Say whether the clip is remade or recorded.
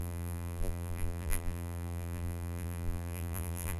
remade